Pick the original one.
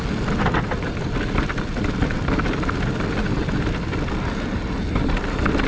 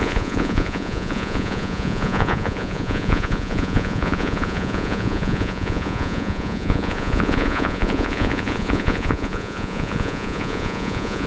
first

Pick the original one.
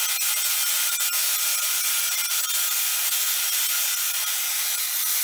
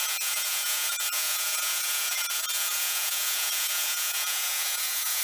first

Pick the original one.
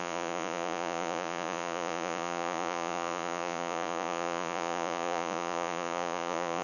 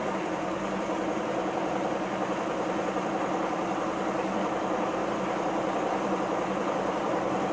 second